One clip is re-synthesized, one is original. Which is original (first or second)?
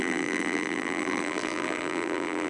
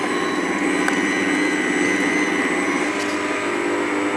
second